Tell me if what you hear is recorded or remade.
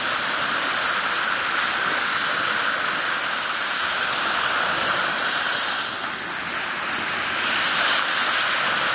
recorded